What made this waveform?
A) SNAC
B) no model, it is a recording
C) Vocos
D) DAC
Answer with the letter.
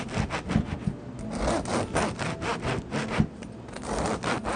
B